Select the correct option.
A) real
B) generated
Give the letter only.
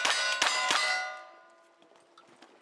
A